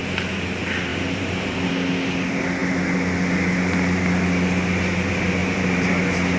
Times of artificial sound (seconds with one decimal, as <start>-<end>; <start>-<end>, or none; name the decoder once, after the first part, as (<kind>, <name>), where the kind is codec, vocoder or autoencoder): 0.9-1.7 (vocoder, BigVGAN v2); 5.4-6.0